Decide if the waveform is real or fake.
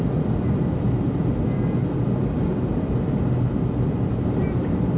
fake